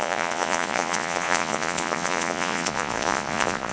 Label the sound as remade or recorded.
remade